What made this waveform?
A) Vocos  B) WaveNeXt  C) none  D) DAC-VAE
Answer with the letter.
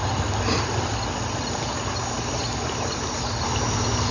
C